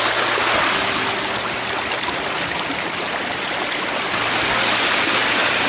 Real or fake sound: real